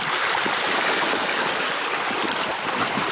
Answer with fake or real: real